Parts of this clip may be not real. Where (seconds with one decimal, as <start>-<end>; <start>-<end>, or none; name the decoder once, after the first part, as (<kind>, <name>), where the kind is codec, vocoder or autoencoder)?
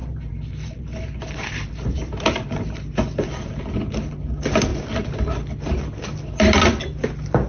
0.0-3.7 (vocoder, BigVGAN v2)